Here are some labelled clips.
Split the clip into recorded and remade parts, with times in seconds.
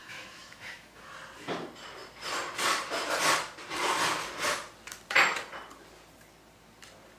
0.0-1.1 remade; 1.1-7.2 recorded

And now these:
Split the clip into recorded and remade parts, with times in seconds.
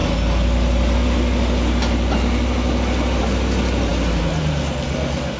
0.0-5.4 recorded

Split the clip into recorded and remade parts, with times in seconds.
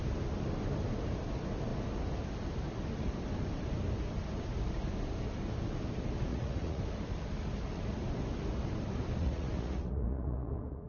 0.0-6.3 recorded; 6.3-6.8 remade; 6.8-9.2 recorded; 9.2-10.9 remade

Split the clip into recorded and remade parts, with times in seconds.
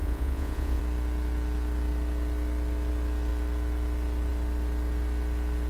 0.0-0.8 remade; 0.8-5.7 recorded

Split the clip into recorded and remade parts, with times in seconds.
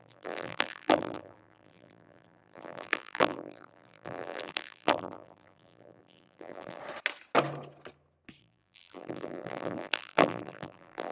0.0-6.8 remade; 6.8-8.4 recorded; 8.4-11.1 remade